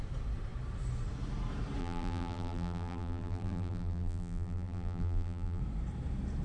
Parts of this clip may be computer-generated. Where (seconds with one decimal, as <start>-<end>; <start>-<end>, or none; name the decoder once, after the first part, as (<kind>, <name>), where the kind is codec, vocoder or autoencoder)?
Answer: 1.8-5.6 (vocoder, BigVGAN v2)